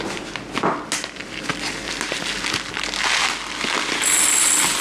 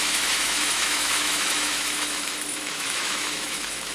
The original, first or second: first